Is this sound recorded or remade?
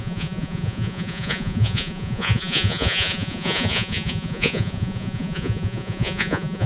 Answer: remade